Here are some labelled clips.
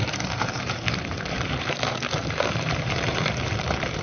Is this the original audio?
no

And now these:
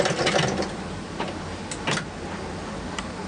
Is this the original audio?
yes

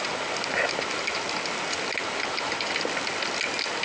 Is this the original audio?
yes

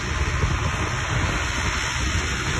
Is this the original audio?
yes